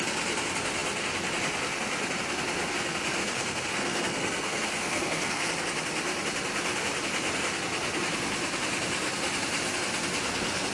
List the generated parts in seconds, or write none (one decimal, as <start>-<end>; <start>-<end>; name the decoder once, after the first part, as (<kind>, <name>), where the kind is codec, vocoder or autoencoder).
3.2-5.5 (codec, SNAC)